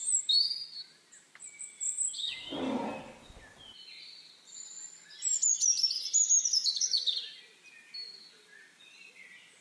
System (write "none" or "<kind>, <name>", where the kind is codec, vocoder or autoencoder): none